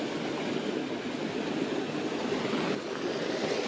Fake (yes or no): no